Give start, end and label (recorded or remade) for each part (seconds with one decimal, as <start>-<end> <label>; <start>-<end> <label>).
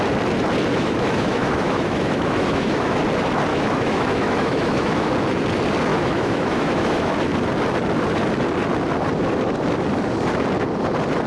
0.0-0.7 recorded; 0.7-3.0 remade; 3.0-3.5 recorded; 3.5-5.1 remade; 5.1-5.9 recorded; 5.9-7.1 remade; 7.1-11.3 recorded